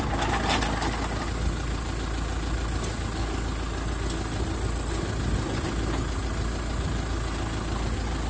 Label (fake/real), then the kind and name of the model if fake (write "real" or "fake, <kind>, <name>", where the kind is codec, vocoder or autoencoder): real